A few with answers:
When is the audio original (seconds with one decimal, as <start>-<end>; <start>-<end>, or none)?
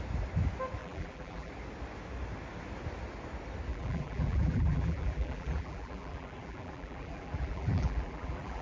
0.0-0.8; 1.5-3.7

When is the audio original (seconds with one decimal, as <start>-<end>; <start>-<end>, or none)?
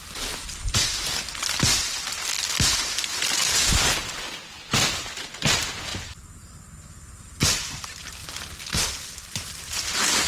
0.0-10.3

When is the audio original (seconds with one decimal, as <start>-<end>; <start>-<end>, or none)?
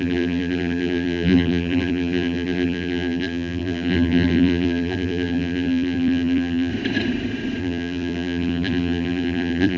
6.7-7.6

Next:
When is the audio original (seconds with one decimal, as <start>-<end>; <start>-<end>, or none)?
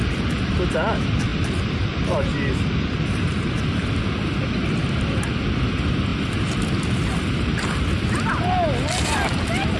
none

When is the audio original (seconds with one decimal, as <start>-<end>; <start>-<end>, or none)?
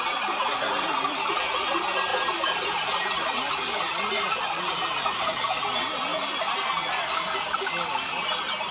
0.0-2.1; 5.6-6.1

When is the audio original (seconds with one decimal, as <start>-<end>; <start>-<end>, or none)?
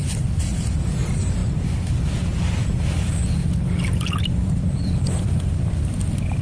1.4-2.4; 3.4-4.2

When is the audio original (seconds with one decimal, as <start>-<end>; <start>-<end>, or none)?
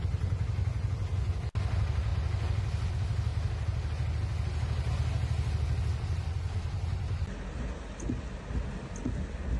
0.0-9.6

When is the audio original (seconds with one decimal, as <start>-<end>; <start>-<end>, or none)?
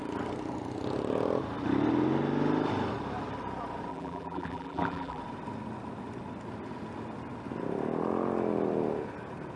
0.0-3.9; 5.2-9.6